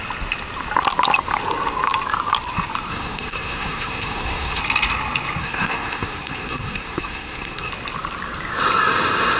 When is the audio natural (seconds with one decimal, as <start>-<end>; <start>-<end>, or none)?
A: 0.0-2.9; 4.6-5.4; 7.7-9.4